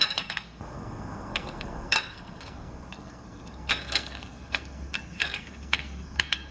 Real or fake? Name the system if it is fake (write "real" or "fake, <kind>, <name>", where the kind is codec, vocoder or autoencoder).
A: fake, codec, SNAC